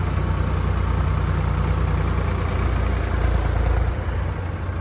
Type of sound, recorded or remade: recorded